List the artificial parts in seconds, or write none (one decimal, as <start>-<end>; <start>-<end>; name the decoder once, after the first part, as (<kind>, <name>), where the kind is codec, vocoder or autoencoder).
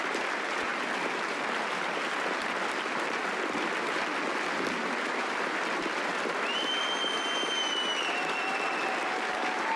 none